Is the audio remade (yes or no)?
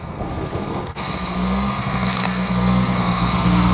yes